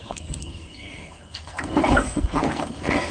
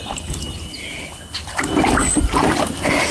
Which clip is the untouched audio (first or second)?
second